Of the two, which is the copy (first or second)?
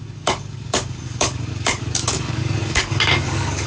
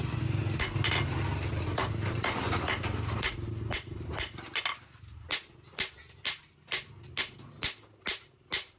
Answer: first